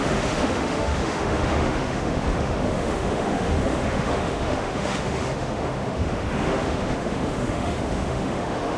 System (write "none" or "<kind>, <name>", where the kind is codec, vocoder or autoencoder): autoencoder, DAC-VAE